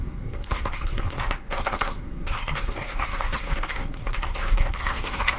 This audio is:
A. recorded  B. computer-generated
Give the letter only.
B